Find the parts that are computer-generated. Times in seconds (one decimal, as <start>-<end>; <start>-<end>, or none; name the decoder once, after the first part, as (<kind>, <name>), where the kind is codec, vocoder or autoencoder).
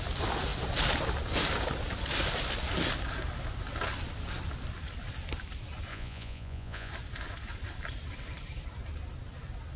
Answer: 5.9-6.9 (vocoder, Vocos)